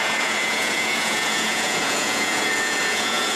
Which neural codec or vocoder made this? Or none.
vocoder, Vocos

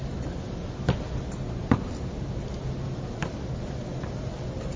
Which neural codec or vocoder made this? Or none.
none